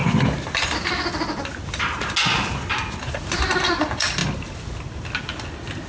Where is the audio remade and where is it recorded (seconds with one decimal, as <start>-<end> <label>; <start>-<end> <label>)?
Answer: 0.0-5.9 recorded